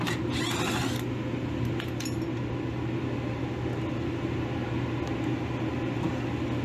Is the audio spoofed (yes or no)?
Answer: no